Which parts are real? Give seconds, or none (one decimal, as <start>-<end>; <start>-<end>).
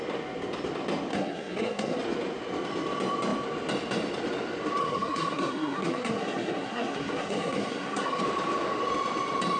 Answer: 0.0-1.1; 2.0-4.8; 8.2-9.6